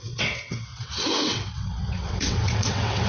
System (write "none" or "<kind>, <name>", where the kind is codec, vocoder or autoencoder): vocoder, WaveNeXt